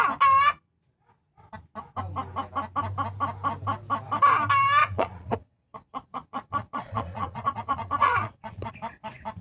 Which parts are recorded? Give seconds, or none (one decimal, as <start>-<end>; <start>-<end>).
0.0-4.8; 8.7-9.4